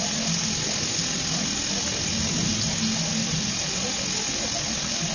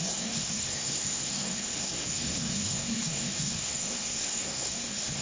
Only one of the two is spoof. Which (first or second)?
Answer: second